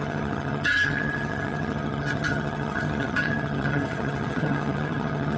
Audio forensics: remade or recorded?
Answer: remade